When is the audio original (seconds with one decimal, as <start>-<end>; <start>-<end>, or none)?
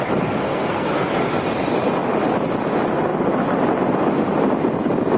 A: 0.0-0.4; 1.1-5.2